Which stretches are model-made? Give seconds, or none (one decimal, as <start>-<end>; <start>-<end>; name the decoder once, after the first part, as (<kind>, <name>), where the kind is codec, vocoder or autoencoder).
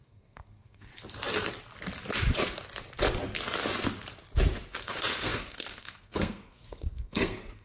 0.0-0.9 (codec, SNAC); 4.8-7.6